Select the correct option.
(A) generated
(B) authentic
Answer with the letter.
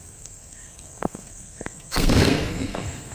A